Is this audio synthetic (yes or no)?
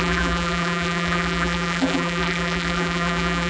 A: yes